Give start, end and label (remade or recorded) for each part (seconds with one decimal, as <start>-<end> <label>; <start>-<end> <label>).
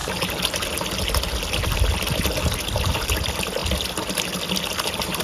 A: 0.0-5.2 recorded